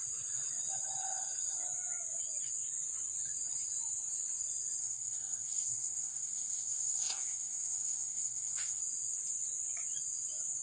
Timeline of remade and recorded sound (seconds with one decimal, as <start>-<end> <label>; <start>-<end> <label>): 0.0-4.8 recorded; 4.8-8.8 remade; 8.8-10.6 recorded